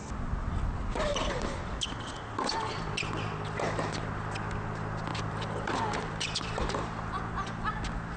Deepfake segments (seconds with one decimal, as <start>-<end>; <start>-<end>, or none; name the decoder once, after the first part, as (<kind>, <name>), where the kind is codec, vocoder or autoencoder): 1.1-2.0 (vocoder, BigVGAN v2); 5.1-6.6